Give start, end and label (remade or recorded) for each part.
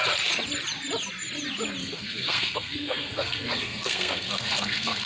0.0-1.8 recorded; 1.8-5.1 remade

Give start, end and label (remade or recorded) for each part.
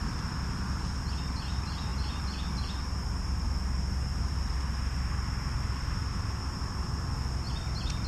0.0-8.1 recorded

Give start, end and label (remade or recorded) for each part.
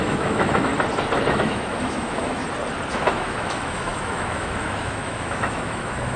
0.0-0.7 remade; 0.7-1.3 recorded; 1.3-2.4 remade; 2.4-2.9 recorded; 2.9-6.2 remade